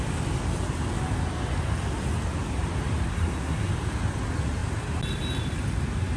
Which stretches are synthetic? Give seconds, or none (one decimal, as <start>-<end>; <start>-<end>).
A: 3.1-3.7